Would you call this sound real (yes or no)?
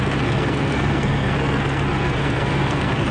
no